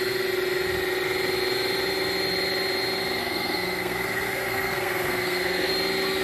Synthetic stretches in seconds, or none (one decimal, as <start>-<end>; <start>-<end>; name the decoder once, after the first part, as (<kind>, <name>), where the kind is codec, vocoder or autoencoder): 3.2-5.7 (codec, SNAC)